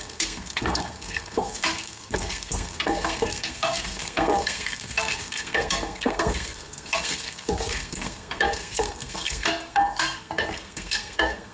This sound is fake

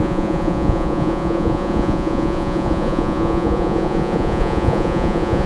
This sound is fake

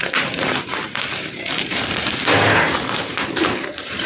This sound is fake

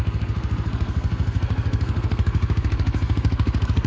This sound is fake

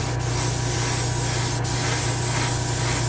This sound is real